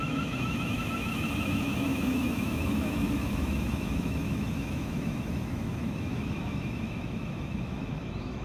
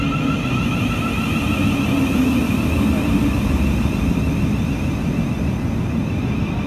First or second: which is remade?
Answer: first